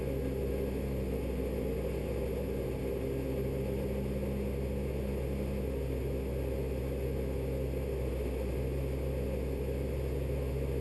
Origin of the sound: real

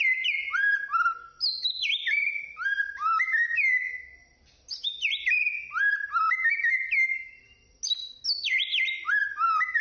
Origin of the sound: real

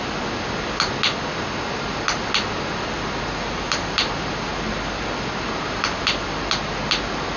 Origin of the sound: real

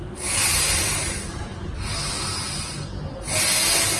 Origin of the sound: real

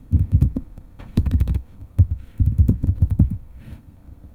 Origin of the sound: fake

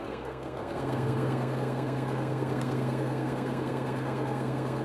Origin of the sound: fake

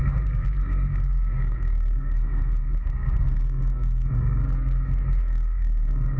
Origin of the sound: fake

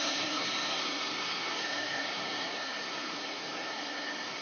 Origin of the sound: fake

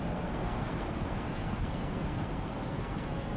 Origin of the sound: fake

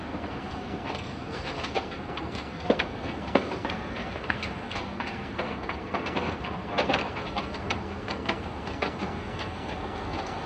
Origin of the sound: fake